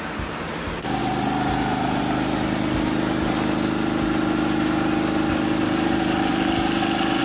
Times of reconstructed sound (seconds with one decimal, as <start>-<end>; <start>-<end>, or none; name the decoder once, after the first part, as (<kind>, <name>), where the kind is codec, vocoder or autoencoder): none

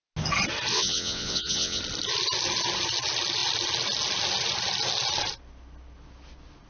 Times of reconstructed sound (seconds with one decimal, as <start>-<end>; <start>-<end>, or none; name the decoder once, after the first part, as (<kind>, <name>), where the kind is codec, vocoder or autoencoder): 0.7-1.8 (vocoder, WaveNeXt)

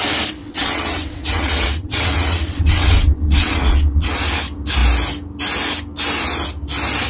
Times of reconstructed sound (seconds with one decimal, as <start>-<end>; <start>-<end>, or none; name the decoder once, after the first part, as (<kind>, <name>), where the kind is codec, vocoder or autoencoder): 0.4-4.2 (vocoder, WaveNeXt)

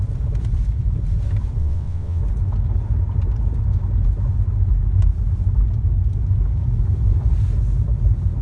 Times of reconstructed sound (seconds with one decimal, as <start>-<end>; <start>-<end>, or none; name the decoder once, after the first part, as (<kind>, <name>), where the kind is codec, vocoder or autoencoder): 1.6-2.2 (vocoder, WaveNeXt)

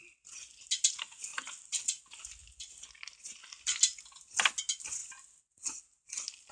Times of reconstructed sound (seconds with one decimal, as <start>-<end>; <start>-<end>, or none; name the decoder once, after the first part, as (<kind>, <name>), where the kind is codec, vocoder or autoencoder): none